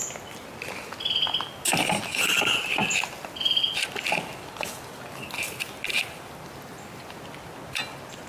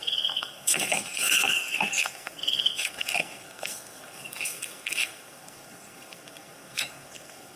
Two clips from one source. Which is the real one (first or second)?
first